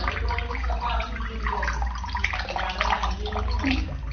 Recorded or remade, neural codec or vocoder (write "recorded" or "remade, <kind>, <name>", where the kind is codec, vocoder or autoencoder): recorded